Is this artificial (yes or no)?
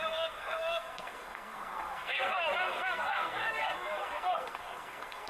yes